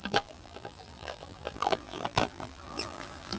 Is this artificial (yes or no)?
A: yes